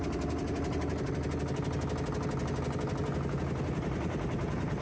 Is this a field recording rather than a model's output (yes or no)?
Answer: yes